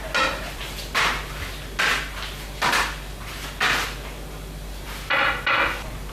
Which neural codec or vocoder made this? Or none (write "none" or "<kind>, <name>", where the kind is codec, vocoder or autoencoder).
none